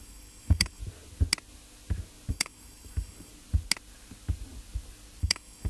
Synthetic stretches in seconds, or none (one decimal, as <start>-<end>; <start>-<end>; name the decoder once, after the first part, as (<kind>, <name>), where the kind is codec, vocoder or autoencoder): 0.0-0.8 (codec, DAC); 2.3-3.3; 5.2-5.7